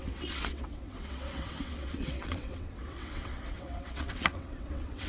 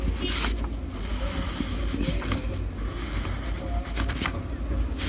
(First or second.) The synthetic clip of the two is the first